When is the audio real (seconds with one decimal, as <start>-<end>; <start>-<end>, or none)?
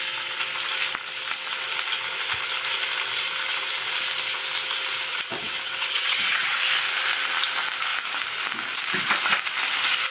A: 0.0-5.1; 6.6-10.1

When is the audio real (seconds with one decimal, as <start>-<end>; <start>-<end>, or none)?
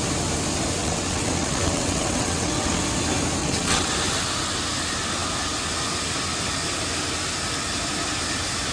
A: 0.0-0.8; 2.8-3.4; 3.9-8.7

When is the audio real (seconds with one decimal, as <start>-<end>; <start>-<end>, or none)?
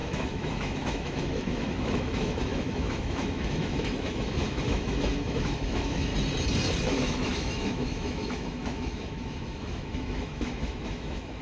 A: 6.1-6.8